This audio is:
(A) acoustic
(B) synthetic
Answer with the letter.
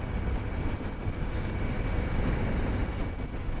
A